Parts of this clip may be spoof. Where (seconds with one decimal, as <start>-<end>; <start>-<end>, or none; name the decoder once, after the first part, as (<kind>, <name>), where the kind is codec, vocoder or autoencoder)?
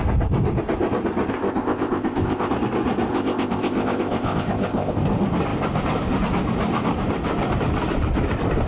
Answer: 1.3-2.5 (codec, ZipCodec); 3.1-4.9